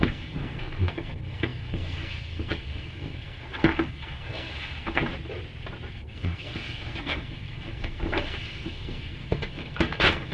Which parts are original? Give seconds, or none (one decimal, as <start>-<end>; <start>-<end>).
5.0-5.9